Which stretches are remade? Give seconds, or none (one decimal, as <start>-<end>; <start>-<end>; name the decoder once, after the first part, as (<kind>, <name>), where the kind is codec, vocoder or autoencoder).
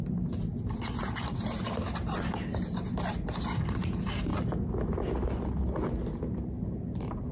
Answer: 0.0-4.3 (vocoder, BigVGAN v2); 5.9-7.3